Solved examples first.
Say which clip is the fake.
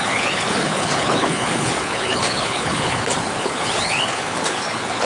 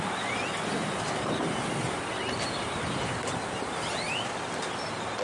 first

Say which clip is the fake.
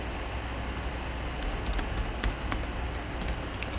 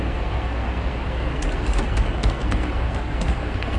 second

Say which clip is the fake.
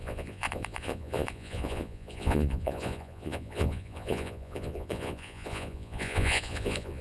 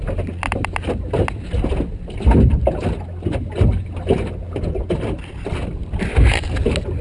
first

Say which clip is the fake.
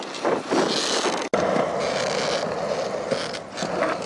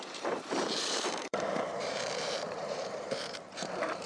second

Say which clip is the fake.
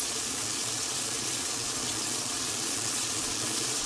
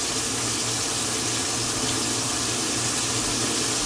first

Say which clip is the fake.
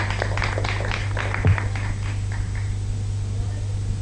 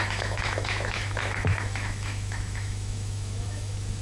second